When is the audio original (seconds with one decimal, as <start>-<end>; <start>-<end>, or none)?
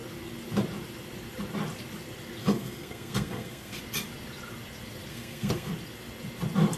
0.0-2.4; 3.8-5.1; 5.7-6.8